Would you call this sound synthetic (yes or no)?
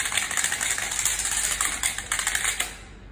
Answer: no